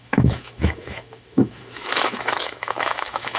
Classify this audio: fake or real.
fake